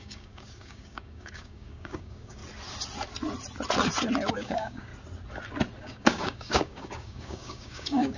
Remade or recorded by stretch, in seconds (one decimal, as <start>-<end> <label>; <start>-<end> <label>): 0.0-2.4 remade; 2.4-4.3 recorded; 4.3-4.9 remade; 4.9-5.8 recorded; 5.8-8.2 remade